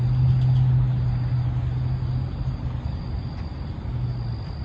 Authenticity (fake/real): real